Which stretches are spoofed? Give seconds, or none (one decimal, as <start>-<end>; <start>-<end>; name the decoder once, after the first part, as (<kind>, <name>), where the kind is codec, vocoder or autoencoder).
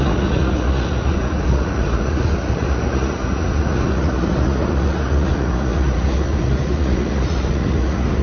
0.0-8.2 (vocoder, Vocos)